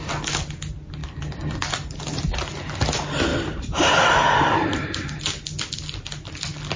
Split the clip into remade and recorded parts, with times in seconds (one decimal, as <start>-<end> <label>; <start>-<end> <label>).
0.0-3.3 recorded; 3.3-5.2 remade; 5.2-6.8 recorded